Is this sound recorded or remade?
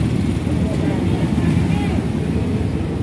recorded